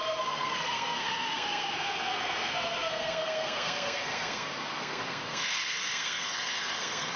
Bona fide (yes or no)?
no